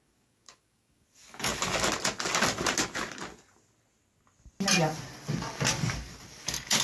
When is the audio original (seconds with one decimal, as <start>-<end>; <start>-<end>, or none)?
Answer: 1.5-5.4